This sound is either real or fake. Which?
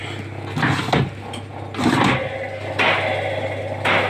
real